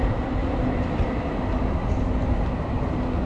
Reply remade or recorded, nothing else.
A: recorded